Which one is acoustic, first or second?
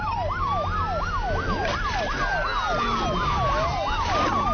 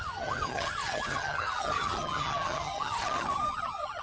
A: first